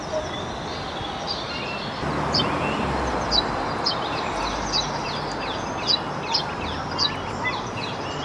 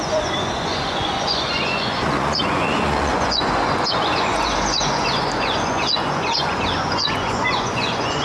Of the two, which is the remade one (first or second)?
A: second